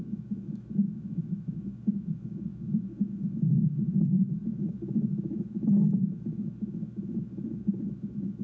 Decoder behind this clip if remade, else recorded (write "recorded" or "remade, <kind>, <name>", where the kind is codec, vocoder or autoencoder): remade, autoencoder, DAC-VAE